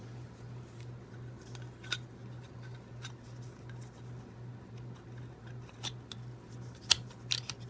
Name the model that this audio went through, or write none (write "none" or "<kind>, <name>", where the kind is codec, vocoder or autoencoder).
none